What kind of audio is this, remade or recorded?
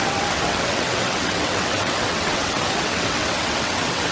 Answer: remade